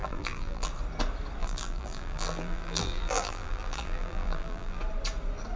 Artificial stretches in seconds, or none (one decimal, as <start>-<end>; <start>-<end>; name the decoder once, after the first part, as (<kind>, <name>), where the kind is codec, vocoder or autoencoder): 0.0-0.7 (vocoder, BigVGAN v2); 1.4-4.8